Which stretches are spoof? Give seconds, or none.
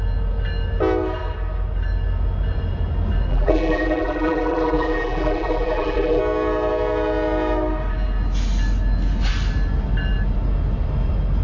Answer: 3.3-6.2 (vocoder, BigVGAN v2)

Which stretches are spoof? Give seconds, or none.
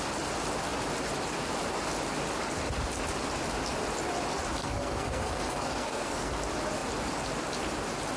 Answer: 4.6-6.3 (codec, SNAC)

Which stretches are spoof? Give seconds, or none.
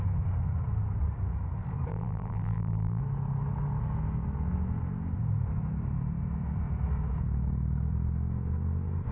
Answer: 1.9-3.0 (vocoder, BigVGAN v2)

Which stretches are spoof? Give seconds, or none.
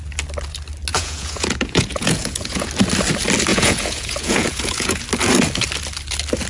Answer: 0.9-2.7 (vocoder, Vocos); 3.5-5.0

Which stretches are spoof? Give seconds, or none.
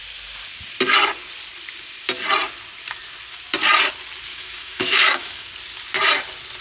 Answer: 4.3-5.5 (autoencoder, DAC-VAE)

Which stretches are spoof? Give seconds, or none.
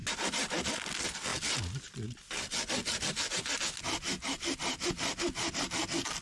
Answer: none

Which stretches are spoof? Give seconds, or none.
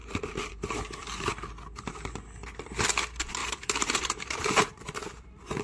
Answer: 3.4-4.7 (vocoder, BigVGAN v2)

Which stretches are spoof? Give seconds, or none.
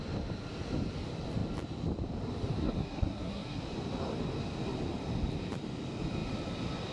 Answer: 2.6-3.6 (codec, SNAC)